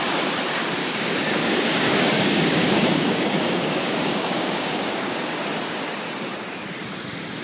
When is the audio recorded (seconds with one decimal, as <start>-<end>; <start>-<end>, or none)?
0.0-0.8; 5.2-7.4